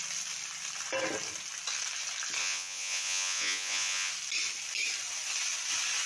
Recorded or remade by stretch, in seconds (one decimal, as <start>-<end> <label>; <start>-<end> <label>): 0.0-2.4 recorded; 2.4-4.1 remade; 4.1-6.1 recorded